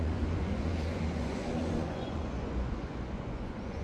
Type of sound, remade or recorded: remade